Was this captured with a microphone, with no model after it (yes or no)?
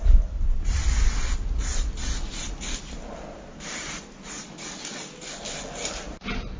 yes